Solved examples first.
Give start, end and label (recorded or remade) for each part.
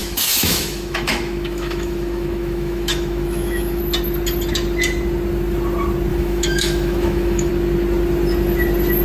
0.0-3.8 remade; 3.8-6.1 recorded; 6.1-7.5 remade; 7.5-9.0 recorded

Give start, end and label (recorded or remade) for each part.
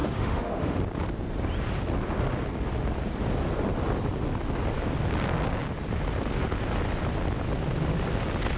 0.0-0.8 remade; 0.8-8.6 recorded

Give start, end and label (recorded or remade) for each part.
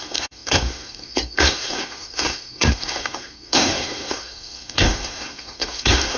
0.0-6.2 remade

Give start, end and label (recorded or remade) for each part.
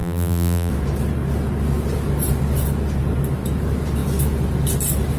0.0-0.7 remade; 0.7-5.2 recorded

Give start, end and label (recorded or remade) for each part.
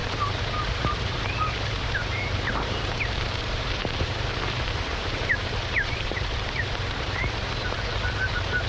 0.0-8.7 remade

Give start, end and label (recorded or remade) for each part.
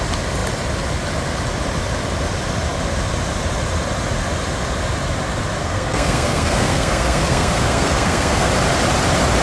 0.0-5.6 recorded; 5.6-8.5 remade; 8.5-9.4 recorded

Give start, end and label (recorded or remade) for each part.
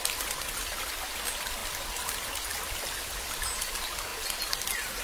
0.0-5.0 recorded